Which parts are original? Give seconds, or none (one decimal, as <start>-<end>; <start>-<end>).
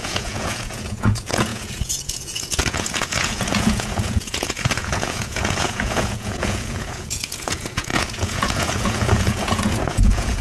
none